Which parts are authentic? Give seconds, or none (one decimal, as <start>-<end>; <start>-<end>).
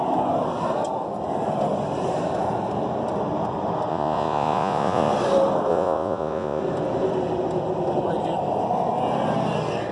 0.0-3.9; 5.1-5.7; 6.6-9.9